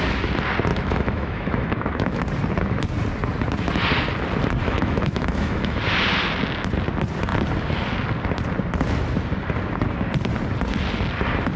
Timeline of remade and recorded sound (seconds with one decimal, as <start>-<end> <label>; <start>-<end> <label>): 0.0-0.7 recorded; 0.7-2.2 remade; 2.2-4.6 recorded; 4.6-5.8 remade; 5.8-11.6 recorded